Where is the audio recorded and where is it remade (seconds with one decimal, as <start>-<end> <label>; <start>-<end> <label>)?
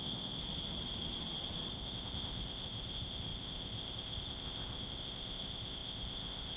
0.0-0.4 remade; 0.4-1.7 recorded; 1.7-6.6 remade